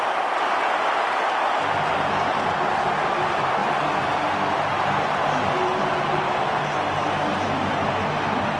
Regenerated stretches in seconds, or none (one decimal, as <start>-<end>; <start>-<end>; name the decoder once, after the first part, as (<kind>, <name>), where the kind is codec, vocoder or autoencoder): none